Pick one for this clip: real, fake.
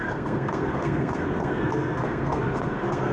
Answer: fake